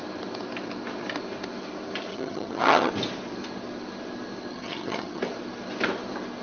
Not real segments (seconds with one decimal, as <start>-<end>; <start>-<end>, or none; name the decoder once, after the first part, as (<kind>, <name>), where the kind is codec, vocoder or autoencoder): 2.1-2.9 (vocoder, HiFi-GAN); 4.5-5.2